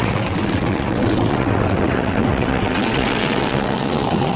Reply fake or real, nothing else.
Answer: fake